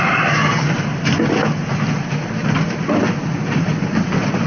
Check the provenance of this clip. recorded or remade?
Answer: recorded